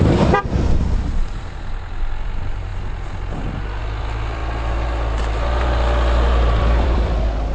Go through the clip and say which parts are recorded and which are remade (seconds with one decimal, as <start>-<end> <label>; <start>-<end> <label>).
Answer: 0.0-2.7 remade; 2.7-3.8 recorded; 3.8-4.4 remade; 4.4-6.6 recorded; 6.6-7.5 remade